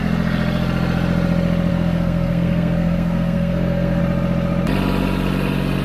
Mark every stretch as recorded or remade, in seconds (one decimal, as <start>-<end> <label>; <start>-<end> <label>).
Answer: 0.0-1.7 recorded; 1.7-4.0 remade; 4.0-5.8 recorded